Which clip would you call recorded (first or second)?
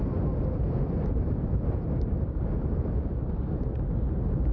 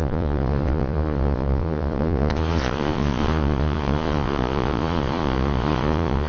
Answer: first